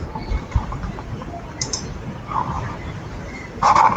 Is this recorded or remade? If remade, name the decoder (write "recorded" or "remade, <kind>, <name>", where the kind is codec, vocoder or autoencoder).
remade, vocoder, BigVGAN v2